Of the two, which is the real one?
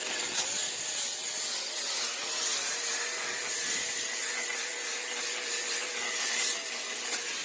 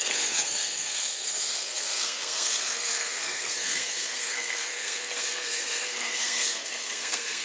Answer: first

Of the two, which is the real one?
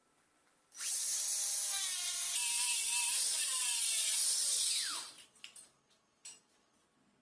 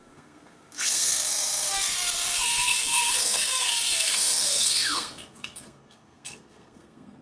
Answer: first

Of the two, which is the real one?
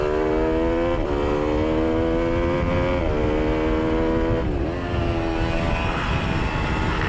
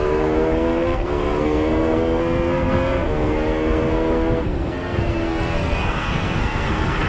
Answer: first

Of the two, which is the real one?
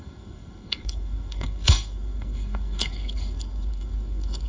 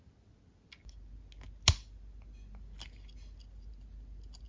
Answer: second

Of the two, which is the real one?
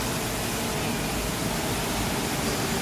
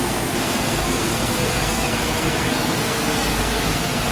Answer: first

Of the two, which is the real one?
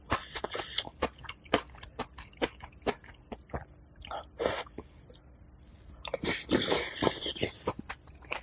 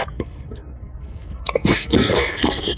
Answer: first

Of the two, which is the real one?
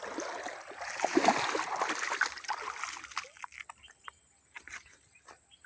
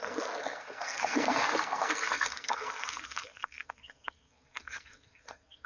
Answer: first